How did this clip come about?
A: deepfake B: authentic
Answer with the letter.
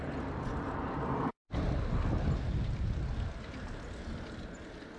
B